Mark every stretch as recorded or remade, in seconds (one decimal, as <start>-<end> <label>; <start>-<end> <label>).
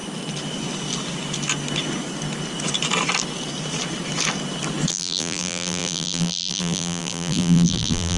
0.0-4.9 recorded; 4.9-8.2 remade